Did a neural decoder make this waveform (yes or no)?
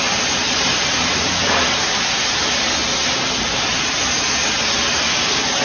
no